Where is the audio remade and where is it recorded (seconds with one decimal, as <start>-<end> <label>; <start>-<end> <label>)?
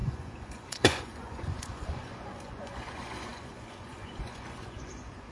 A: 0.0-5.3 remade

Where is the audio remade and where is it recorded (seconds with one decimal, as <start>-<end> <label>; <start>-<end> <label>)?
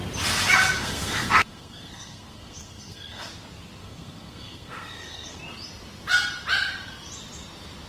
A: 0.0-0.8 recorded; 0.8-3.3 remade; 3.3-3.8 recorded; 3.8-5.4 remade; 5.4-7.9 recorded